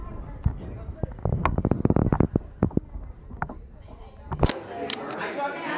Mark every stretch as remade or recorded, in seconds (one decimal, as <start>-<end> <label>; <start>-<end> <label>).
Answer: 0.0-5.8 recorded